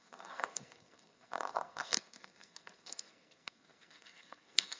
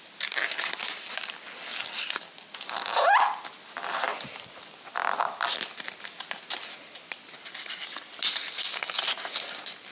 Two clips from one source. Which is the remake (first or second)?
first